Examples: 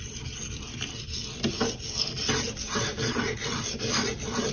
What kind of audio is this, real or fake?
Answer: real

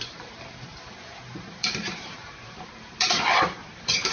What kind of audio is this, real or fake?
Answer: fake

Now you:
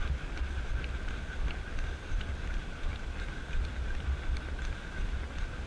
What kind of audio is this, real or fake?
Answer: real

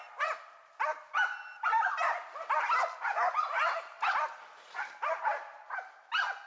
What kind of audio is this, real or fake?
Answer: real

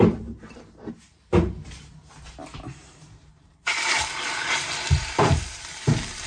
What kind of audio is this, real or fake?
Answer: fake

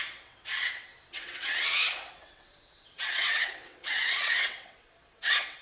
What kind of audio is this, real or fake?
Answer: fake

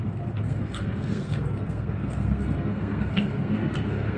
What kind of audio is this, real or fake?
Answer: fake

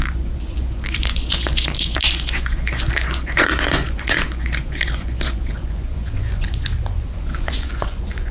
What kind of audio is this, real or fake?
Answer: fake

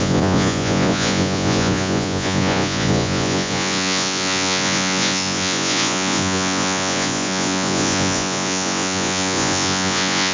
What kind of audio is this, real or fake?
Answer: fake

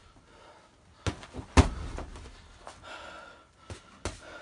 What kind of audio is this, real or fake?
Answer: real